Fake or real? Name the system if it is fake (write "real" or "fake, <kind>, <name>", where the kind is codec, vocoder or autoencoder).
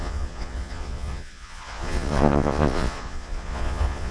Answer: fake, vocoder, Vocos